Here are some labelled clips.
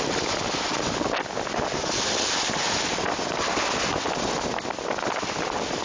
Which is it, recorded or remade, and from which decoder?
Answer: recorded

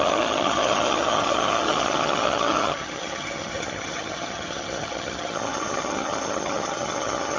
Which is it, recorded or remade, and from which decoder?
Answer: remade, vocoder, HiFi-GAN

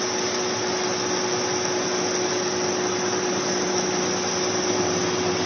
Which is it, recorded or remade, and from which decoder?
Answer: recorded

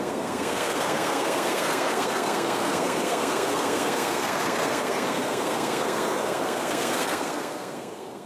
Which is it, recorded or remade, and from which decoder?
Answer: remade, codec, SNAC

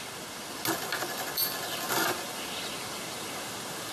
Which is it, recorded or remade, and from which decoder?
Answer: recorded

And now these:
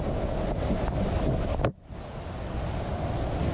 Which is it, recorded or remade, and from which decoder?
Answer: recorded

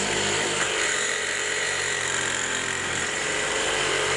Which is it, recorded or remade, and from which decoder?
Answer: remade, vocoder, BigVGAN v2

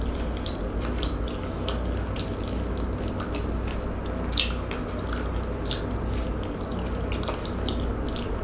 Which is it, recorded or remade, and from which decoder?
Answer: recorded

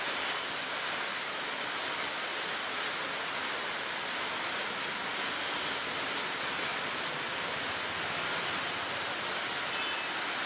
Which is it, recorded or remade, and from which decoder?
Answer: recorded